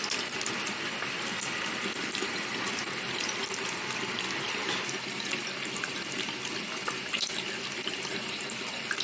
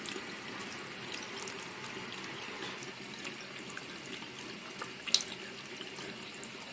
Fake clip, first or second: first